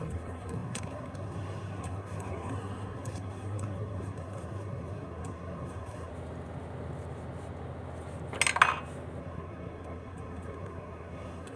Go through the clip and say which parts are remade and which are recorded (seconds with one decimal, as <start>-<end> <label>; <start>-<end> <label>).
0.0-6.1 remade; 6.1-9.2 recorded; 9.2-11.6 remade